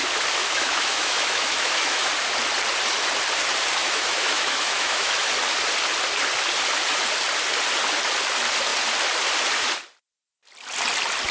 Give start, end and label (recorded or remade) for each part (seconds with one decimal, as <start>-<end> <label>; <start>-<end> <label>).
0.0-0.4 recorded; 0.4-2.1 remade; 2.1-3.8 recorded; 3.8-5.3 remade; 5.3-11.3 recorded